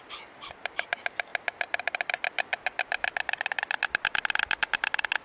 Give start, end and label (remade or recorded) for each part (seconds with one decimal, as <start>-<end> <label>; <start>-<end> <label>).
0.0-5.2 recorded

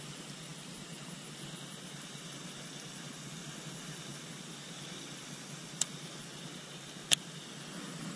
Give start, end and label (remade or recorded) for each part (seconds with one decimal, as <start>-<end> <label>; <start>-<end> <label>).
0.0-8.2 recorded

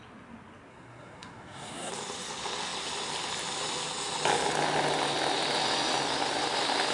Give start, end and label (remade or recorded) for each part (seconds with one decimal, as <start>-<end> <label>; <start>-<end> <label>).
0.0-0.7 recorded; 0.7-1.9 remade; 1.9-6.9 recorded

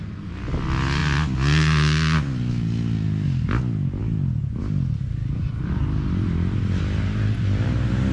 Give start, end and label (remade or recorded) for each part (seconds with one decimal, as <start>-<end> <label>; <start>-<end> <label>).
0.0-8.1 recorded